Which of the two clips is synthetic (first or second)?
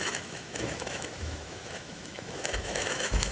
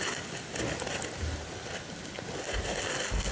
first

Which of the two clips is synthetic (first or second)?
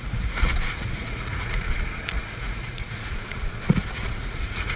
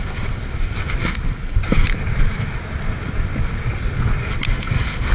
first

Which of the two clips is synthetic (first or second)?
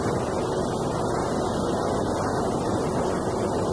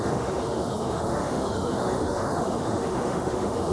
second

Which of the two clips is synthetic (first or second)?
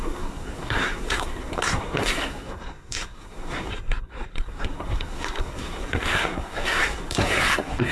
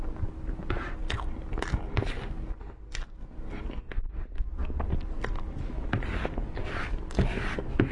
first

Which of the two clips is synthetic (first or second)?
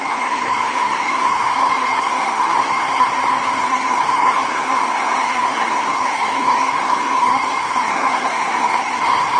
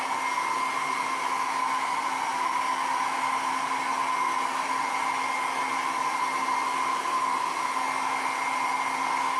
first